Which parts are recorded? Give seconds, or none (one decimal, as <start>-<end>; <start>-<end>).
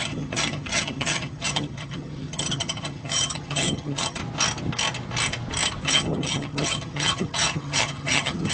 4.2-5.8